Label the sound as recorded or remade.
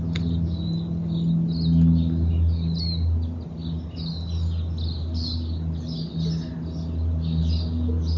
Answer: recorded